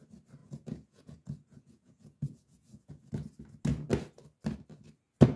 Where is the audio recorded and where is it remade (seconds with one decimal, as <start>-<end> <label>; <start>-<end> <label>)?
0.0-0.4 recorded; 0.4-3.1 remade; 3.1-5.4 recorded